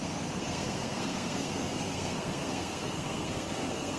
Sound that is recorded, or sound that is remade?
remade